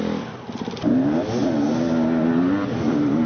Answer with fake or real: real